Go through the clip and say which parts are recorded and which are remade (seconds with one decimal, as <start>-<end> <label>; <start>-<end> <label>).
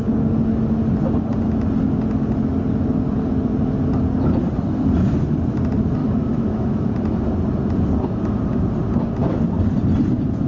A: 0.0-6.0 recorded; 6.0-6.9 remade; 6.9-10.5 recorded